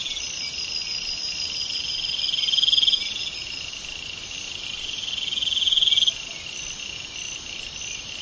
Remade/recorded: recorded